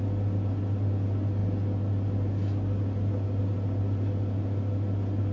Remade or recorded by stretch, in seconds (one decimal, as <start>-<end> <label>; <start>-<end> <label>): 0.0-5.3 recorded